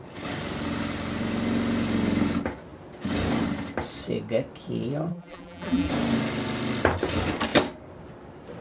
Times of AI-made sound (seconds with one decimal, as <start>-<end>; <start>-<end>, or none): 5.1-5.9